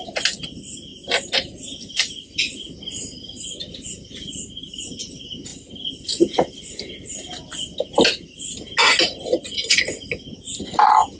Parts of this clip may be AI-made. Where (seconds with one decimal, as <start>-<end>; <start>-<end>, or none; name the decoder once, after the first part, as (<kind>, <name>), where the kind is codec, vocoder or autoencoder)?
none